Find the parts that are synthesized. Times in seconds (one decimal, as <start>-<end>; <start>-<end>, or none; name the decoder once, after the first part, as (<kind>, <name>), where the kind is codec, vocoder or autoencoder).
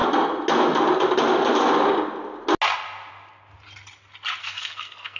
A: 4.4-5.2 (codec, SNAC)